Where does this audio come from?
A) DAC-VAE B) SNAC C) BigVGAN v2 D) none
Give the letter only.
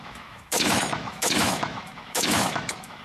A